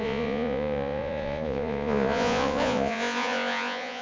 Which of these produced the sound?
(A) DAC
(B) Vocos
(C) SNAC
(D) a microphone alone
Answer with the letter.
B